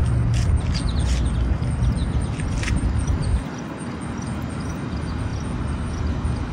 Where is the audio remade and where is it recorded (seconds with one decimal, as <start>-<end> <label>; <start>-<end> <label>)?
0.0-2.0 recorded; 2.0-3.2 remade; 3.2-6.5 recorded